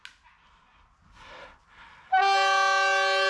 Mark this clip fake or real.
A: real